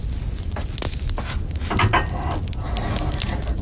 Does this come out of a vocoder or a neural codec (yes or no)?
no